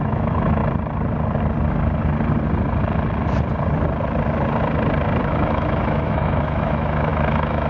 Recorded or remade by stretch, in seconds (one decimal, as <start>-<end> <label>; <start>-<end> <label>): 0.0-0.6 remade; 0.6-5.2 recorded; 5.2-7.7 remade